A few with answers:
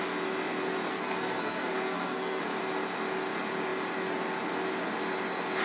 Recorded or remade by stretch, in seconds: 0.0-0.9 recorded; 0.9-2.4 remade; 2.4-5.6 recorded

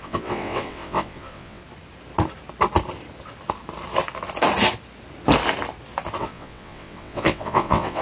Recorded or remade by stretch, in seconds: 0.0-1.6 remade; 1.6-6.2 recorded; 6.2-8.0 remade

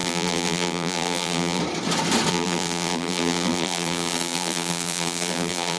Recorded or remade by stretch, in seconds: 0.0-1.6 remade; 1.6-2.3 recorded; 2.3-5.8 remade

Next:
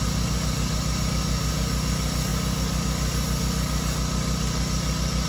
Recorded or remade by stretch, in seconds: 0.0-5.3 recorded

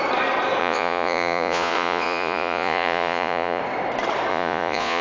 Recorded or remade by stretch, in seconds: 0.0-0.6 recorded; 0.6-3.6 remade; 3.6-4.3 recorded; 4.3-5.0 remade

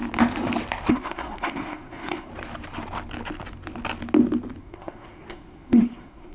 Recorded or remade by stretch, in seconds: 0.0-0.9 recorded; 0.9-2.3 remade; 2.3-4.6 recorded; 4.6-6.3 remade